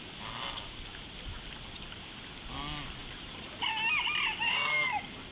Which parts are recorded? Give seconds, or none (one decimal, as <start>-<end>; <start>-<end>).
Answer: 0.0-5.3